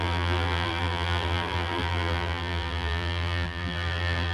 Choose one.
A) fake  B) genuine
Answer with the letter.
A